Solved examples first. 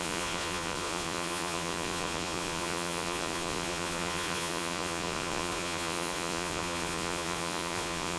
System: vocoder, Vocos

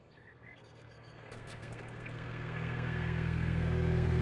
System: codec, SNAC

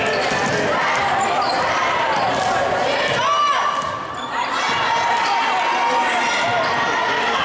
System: none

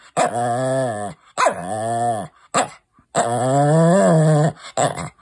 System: none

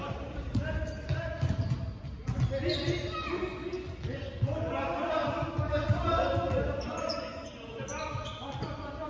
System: none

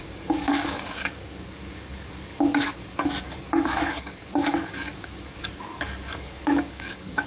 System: codec, DAC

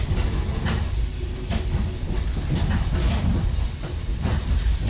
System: none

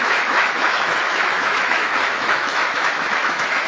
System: autoencoder, DAC-VAE